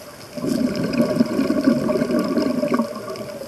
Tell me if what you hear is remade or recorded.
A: recorded